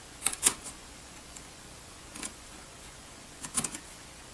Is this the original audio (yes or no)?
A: no